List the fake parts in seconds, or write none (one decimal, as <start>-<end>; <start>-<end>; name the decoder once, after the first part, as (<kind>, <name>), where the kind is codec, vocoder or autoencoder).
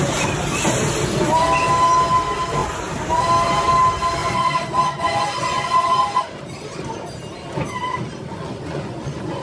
4.2-6.4 (vocoder, Vocos); 8.3-9.4